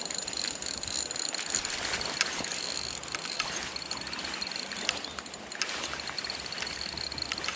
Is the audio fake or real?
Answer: fake